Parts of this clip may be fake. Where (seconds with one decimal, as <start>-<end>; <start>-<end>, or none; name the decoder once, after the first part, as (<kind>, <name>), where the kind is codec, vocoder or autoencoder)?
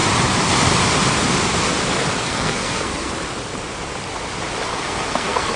2.2-3.1 (codec, SNAC); 4.7-5.6